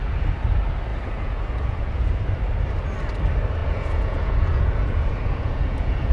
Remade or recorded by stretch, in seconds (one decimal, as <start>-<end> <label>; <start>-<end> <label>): 0.0-0.9 recorded; 0.9-2.1 remade; 2.1-3.6 recorded; 3.6-6.1 remade